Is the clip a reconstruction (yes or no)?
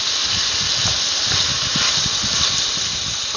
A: no